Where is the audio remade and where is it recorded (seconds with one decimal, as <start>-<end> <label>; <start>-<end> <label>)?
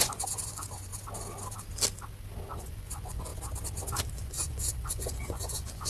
0.0-0.9 remade; 0.9-2.6 recorded; 2.6-3.3 remade; 3.3-4.1 recorded; 4.1-5.9 remade